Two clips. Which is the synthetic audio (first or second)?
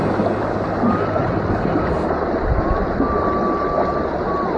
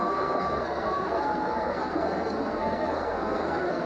second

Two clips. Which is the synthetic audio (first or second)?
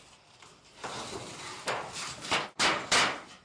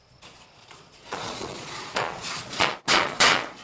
second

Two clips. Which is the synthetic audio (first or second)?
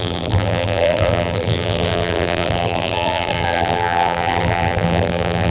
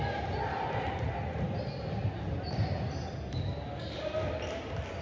first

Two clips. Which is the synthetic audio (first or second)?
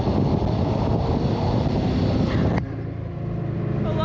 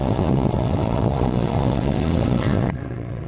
second